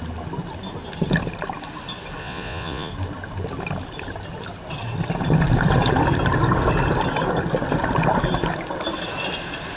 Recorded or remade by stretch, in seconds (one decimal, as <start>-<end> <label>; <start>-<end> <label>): 0.0-2.2 recorded; 2.2-2.9 remade; 2.9-9.8 recorded